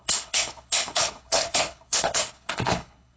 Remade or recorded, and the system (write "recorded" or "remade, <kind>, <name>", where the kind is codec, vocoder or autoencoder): remade, codec, HILCodec